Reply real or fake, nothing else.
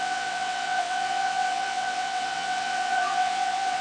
fake